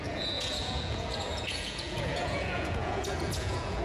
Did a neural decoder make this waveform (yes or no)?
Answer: yes